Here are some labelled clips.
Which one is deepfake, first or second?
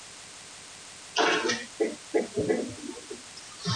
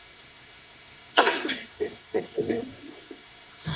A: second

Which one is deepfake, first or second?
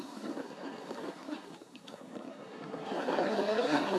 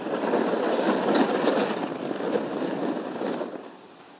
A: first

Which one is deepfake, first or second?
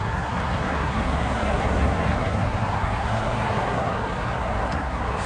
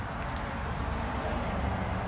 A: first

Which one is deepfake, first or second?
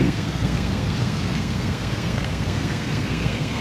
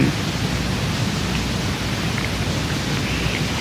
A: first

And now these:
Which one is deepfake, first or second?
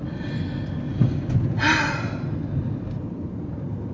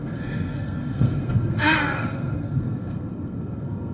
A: second